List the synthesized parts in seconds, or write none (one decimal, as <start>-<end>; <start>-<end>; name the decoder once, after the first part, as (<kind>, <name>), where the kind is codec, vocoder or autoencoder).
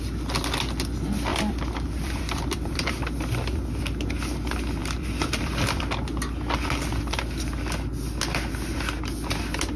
1.3-2.9 (vocoder, BigVGAN v2); 4.8-5.8